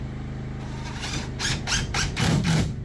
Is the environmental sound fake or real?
real